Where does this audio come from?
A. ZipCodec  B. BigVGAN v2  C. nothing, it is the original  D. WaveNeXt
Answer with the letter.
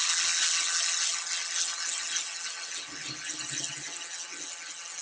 C